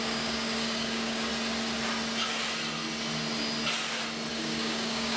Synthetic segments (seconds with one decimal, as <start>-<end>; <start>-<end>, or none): 0.0-1.3; 4.3-5.2